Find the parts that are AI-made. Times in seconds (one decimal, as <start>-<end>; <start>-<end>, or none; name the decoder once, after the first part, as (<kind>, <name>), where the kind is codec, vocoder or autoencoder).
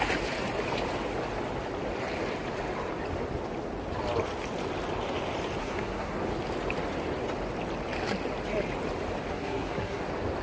5.6-6.1 (codec, SNAC); 9.3-10.0